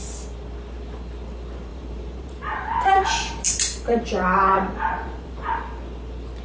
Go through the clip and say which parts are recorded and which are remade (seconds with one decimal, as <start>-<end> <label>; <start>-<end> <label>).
0.0-1.7 recorded; 1.7-5.5 remade; 5.5-6.4 recorded